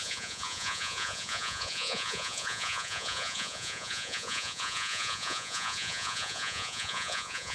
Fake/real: fake